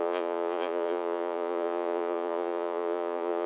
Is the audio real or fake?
fake